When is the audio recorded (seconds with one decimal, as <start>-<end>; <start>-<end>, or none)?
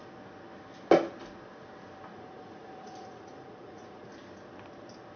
0.0-2.1; 4.1-5.2